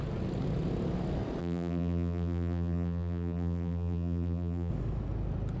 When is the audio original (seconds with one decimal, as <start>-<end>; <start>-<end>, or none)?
0.0-1.4; 4.7-5.6